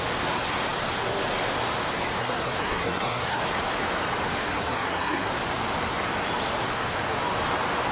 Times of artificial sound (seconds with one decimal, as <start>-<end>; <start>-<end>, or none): 2.2-3.4; 4.5-5.3